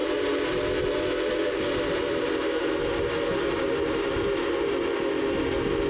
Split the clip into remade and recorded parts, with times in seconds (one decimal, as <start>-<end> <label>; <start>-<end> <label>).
0.0-5.9 recorded

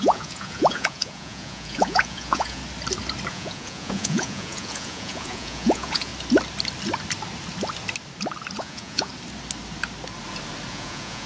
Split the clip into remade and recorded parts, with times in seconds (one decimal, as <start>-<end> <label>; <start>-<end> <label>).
0.0-2.6 remade; 2.6-3.3 recorded; 3.3-6.1 remade; 6.1-8.6 recorded; 8.6-9.1 remade; 9.1-10.7 recorded; 10.7-11.3 remade